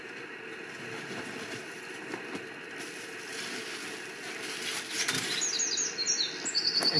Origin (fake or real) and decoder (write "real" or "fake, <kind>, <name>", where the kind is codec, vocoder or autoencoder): real